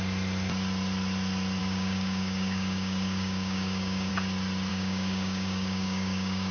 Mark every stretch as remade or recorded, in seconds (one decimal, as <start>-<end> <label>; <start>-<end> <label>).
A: 0.0-1.6 recorded; 1.6-4.1 remade; 4.1-4.7 recorded; 4.7-6.5 remade